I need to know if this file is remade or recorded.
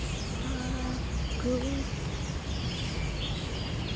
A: recorded